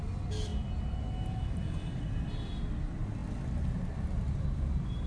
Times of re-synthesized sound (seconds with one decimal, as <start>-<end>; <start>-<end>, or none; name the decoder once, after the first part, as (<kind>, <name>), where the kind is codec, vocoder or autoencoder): none